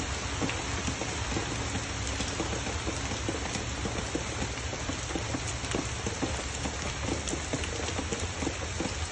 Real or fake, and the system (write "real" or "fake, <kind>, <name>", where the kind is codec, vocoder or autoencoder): real